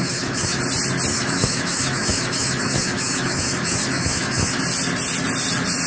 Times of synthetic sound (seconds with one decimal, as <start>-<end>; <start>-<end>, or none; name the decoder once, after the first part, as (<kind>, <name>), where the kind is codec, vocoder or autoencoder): 0.0-0.6 (autoencoder, DAC-VAE); 1.1-4.6